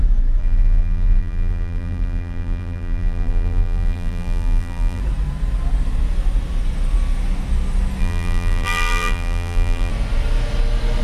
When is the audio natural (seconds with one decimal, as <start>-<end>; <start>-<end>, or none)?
0.0-0.4; 5.0-8.0; 9.9-11.0